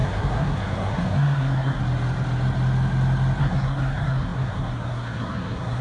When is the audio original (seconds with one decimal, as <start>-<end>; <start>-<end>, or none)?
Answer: 1.8-3.4